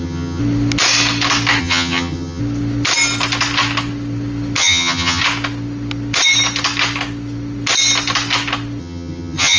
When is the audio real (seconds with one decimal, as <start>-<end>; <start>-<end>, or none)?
0.4-1.6; 2.4-4.6; 5.2-8.8